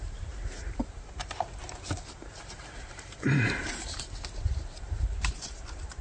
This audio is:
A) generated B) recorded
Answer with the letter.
A